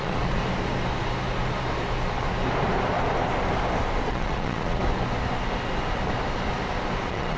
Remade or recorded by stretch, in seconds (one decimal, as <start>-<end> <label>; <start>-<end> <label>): 0.0-0.4 remade; 0.4-4.0 recorded; 4.0-4.8 remade; 4.8-7.0 recorded; 7.0-7.4 remade